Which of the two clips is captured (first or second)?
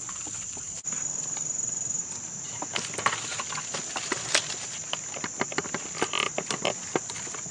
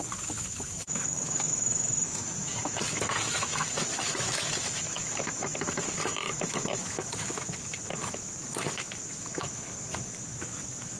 first